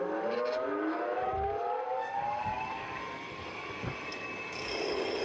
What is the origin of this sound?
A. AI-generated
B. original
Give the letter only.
A